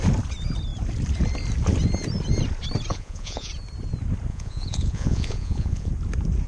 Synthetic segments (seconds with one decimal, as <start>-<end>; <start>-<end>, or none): 2.9-3.5; 4.3-5.9